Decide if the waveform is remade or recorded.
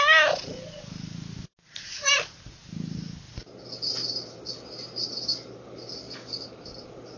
recorded